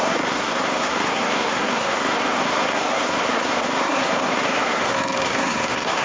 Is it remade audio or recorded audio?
remade